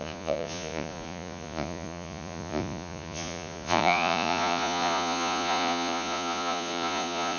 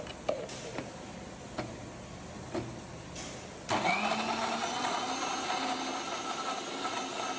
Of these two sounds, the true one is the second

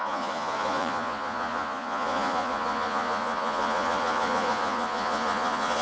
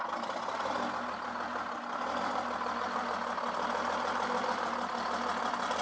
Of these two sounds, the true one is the second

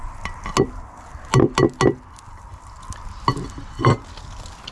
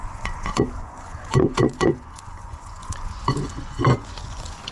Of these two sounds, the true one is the first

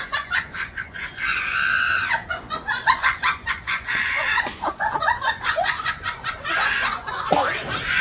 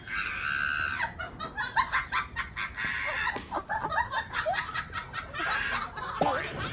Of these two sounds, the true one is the second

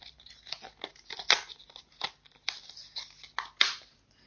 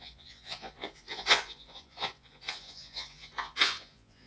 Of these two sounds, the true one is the first